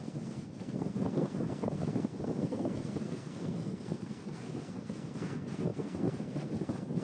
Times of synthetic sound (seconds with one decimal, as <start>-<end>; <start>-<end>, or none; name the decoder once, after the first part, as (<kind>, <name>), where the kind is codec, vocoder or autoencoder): 0.0-7.0 (codec, SNAC)